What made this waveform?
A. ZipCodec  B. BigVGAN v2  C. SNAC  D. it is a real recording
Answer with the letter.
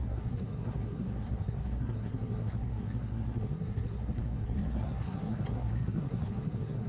C